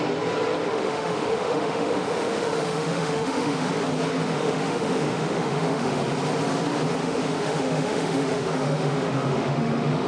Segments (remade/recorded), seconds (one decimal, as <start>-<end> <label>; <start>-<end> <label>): 0.0-0.7 recorded; 0.7-3.7 remade; 3.7-4.3 recorded; 4.3-6.0 remade; 6.0-7.0 recorded; 7.0-10.1 remade